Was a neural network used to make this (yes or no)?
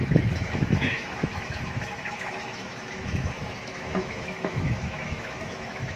yes